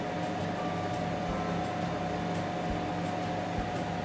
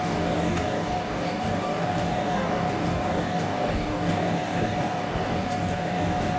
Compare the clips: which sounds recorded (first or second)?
first